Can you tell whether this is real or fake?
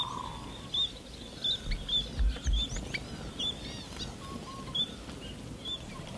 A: real